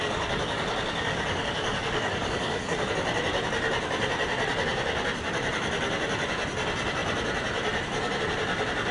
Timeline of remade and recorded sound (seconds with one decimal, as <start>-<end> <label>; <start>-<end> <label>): 0.0-0.7 remade; 0.7-1.1 recorded; 1.1-2.9 remade; 2.9-8.9 recorded